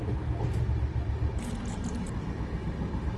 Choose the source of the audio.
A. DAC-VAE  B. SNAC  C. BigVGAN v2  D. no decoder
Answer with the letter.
D